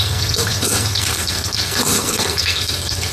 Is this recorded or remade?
remade